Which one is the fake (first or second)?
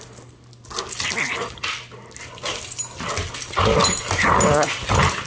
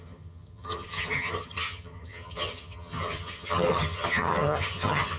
second